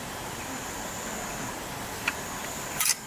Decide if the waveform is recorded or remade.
remade